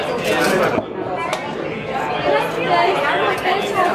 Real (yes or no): yes